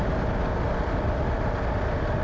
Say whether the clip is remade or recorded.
recorded